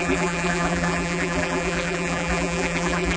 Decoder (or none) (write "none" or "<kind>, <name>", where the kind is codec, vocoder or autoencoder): vocoder, BigVGAN v2